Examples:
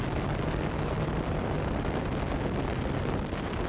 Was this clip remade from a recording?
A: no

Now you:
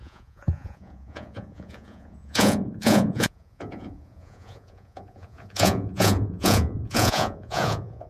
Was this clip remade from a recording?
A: yes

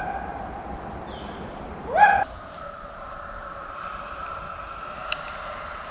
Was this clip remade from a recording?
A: no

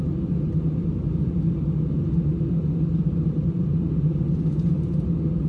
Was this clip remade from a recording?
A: no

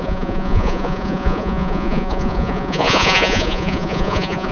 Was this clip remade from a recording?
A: yes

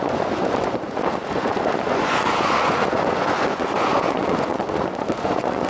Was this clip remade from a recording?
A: yes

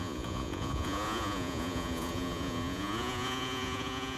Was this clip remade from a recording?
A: yes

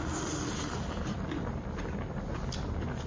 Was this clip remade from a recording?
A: no